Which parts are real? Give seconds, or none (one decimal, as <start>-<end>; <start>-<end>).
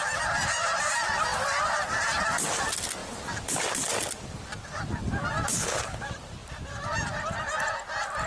0.0-5.5; 6.0-8.3